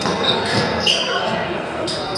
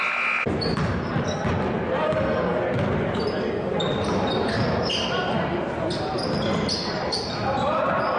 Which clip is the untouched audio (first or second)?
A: second